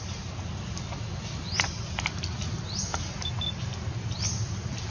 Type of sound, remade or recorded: recorded